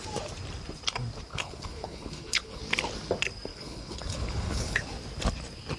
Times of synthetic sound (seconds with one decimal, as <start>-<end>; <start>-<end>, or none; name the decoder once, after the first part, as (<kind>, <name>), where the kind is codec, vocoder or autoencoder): 1.3-2.6 (codec, HILCodec); 3.5-4.9